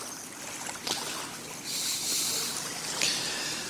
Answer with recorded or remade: recorded